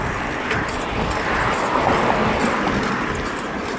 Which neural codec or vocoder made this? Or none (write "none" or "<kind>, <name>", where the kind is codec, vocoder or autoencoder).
none